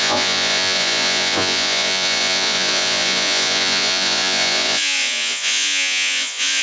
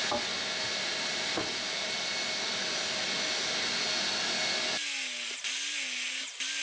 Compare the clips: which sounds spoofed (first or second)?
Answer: first